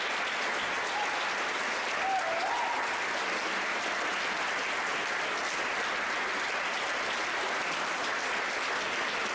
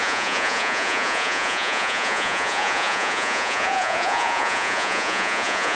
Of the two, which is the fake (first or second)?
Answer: second